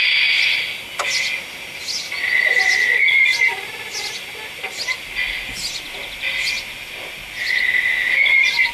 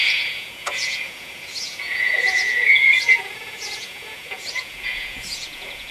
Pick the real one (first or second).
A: first